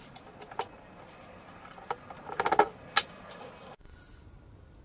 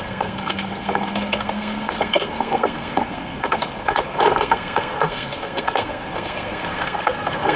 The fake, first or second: second